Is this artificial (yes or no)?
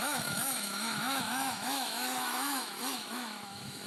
yes